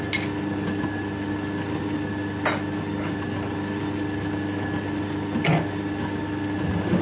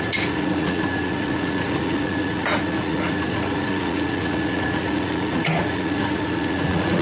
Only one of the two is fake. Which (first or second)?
second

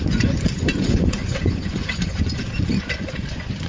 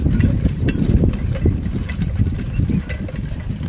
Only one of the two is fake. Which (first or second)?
first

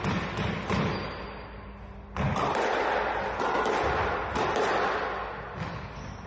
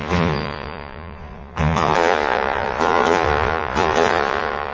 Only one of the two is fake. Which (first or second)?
second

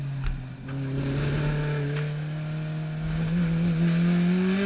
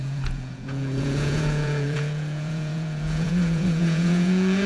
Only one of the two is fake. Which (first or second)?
second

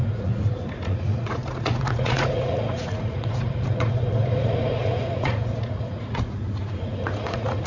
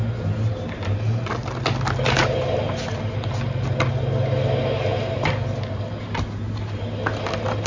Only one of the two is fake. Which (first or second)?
first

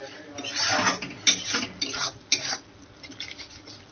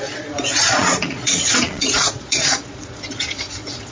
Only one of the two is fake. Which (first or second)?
second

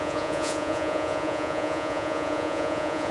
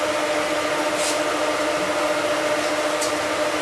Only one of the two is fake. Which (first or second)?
first